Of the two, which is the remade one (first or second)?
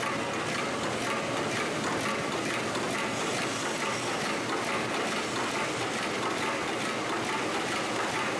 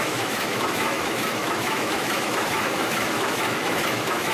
second